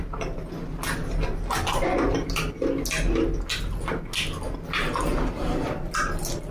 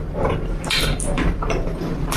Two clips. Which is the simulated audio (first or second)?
second